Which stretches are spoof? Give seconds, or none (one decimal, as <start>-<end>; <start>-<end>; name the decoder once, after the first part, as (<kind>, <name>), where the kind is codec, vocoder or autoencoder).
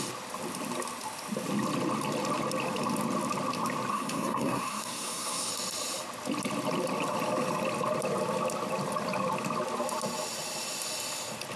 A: 3.9-5.5 (codec, SNAC)